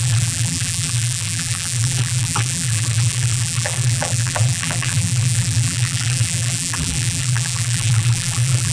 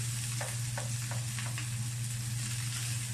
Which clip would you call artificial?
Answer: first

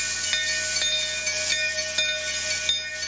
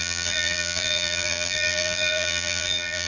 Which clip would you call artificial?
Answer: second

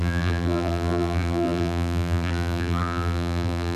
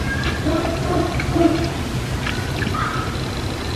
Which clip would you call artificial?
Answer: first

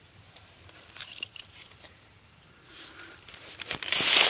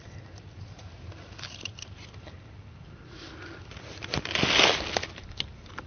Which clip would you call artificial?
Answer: first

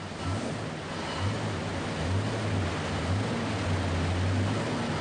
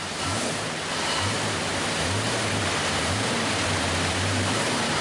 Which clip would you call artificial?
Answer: second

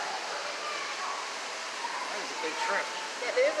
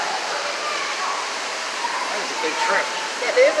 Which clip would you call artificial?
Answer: second